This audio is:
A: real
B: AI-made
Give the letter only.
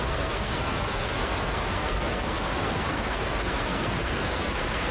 B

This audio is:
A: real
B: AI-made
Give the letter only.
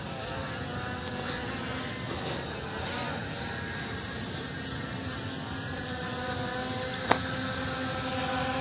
A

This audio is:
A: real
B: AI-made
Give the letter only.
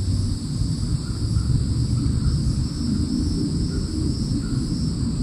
A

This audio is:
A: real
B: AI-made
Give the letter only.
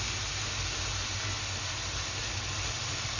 A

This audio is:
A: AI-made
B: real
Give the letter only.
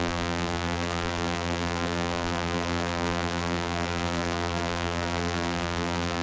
A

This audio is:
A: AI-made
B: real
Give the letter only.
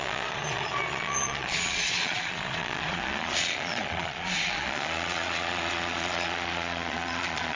A